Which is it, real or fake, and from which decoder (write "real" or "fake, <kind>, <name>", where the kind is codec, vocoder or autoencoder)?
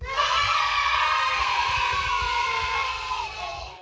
fake, codec, SNAC